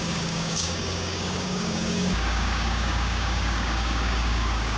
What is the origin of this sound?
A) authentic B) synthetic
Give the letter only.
B